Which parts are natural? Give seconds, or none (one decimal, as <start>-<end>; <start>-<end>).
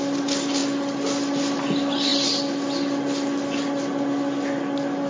0.0-5.1